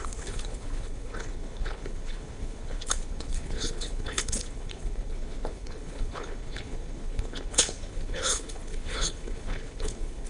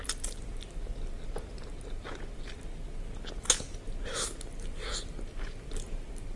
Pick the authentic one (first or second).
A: second